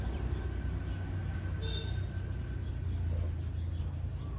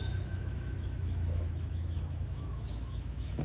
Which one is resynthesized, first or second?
second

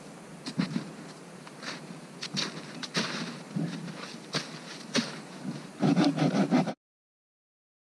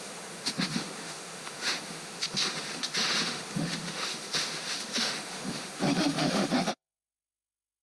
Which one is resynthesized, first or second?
second